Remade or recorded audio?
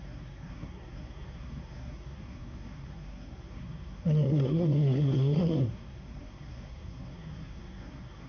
remade